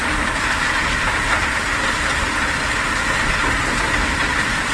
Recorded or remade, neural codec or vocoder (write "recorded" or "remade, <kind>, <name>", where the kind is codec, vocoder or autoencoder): recorded